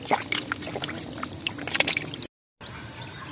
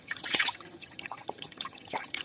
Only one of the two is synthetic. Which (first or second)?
second